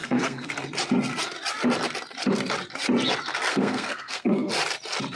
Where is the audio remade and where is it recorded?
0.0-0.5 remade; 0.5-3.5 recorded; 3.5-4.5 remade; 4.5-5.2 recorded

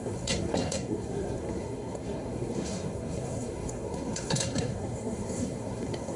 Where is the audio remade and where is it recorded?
0.0-6.2 remade

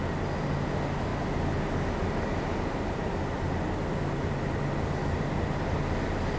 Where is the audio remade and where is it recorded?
0.0-6.4 recorded

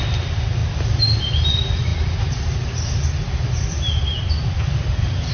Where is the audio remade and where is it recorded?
0.0-0.6 remade; 0.6-1.2 recorded; 1.2-5.3 remade

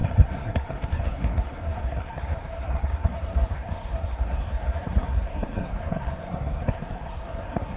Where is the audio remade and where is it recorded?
0.0-7.8 remade

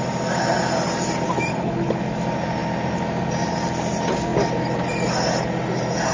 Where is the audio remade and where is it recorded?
0.0-1.5 recorded; 1.5-2.0 remade; 2.0-6.1 recorded